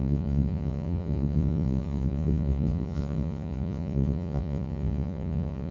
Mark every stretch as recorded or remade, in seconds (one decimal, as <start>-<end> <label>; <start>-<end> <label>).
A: 0.0-5.7 remade